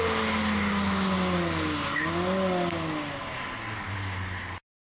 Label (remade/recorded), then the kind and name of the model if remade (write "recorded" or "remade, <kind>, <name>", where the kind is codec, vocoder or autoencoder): recorded